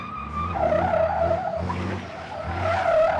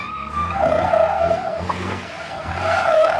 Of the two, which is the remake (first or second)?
second